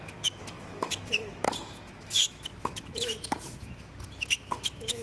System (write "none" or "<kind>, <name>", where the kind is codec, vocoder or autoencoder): autoencoder, DAC-VAE